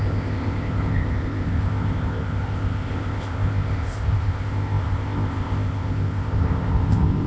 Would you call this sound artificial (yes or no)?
yes